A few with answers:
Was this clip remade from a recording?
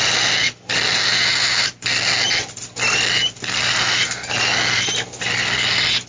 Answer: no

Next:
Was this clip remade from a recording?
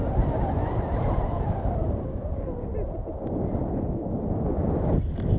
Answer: no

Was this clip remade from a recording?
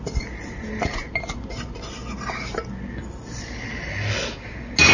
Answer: no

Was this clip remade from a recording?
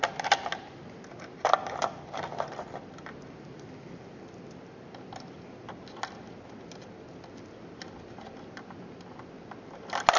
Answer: no